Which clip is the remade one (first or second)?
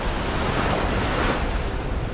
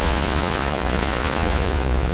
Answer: second